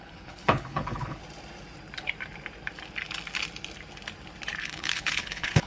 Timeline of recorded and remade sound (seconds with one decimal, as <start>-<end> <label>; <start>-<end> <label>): 0.0-1.2 remade; 1.2-4.6 recorded; 4.6-5.7 remade